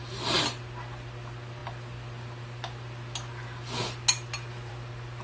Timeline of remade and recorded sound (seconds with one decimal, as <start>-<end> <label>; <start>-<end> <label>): 0.0-5.2 recorded

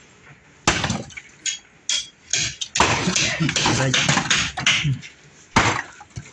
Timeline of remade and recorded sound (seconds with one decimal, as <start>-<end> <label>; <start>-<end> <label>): 0.0-6.3 recorded

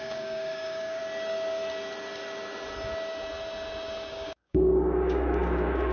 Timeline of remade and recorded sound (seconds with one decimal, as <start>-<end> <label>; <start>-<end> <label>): 0.0-1.0 remade; 1.0-4.1 recorded; 4.1-5.9 remade

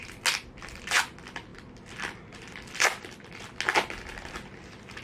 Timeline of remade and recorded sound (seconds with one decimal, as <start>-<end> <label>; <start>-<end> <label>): 0.0-5.0 recorded

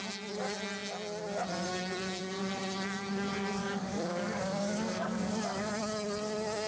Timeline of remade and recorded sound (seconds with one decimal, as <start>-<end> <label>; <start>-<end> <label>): 0.0-3.6 recorded; 3.6-5.7 remade; 5.7-6.7 recorded

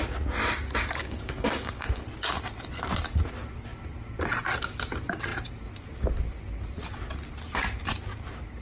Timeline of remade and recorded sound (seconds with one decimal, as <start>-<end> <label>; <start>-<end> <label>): 0.0-1.0 recorded; 1.0-2.0 remade; 2.0-8.6 recorded